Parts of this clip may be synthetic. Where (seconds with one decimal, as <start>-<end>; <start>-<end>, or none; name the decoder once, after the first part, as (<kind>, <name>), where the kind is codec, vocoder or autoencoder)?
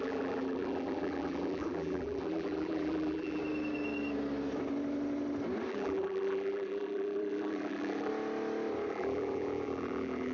0.0-3.4 (vocoder, BigVGAN v2); 5.7-8.1; 8.9-10.3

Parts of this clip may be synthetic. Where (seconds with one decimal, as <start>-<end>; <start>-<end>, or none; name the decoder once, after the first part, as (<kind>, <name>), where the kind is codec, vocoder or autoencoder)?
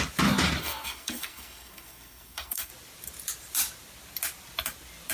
0.6-2.7 (codec, SNAC)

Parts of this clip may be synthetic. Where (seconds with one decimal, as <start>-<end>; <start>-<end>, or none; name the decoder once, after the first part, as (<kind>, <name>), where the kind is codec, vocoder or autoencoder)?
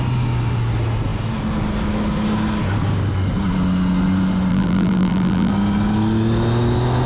4.5-5.5 (vocoder, BigVGAN v2)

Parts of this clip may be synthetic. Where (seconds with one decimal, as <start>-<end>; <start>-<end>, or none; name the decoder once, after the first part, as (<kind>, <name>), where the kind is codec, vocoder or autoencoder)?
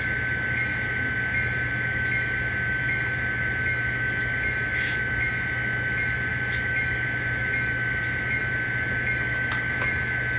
none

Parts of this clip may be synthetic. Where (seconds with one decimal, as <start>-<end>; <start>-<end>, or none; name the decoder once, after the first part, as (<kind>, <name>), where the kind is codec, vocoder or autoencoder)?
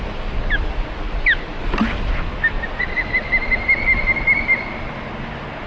none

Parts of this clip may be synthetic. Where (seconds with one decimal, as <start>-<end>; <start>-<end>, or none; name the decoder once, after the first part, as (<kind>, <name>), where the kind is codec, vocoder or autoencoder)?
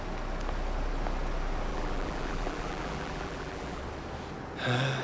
1.7-3.8 (vocoder, BigVGAN v2)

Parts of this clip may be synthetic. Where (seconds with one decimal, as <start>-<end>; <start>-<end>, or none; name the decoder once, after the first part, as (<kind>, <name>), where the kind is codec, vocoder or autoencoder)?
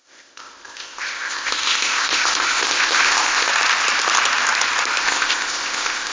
0.0-3.5 (codec, ZipCodec); 5.0-6.1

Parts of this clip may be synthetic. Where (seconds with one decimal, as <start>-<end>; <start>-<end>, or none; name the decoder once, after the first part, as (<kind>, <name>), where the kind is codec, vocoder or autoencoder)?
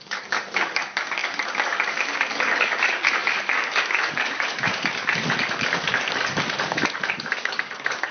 0.0-8.1 (codec, DAC)